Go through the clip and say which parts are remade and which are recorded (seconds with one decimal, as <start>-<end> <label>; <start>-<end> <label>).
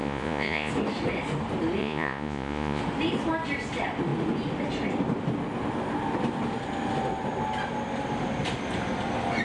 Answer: 0.0-0.7 remade; 0.7-1.8 recorded; 1.8-2.8 remade; 2.8-9.4 recorded